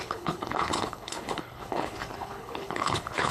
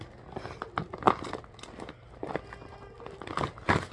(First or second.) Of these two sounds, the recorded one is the second